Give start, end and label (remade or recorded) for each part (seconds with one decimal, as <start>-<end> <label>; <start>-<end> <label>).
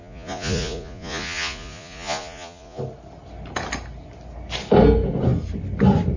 0.0-2.8 remade; 2.8-6.2 recorded